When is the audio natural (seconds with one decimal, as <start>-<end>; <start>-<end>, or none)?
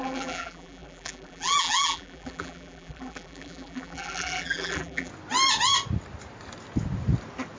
5.1-7.6